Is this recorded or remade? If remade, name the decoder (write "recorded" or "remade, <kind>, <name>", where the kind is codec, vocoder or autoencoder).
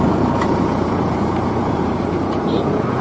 remade, vocoder, Vocos